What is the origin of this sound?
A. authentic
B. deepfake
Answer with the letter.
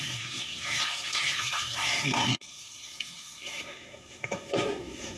B